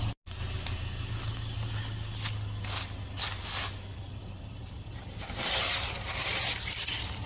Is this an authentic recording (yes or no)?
yes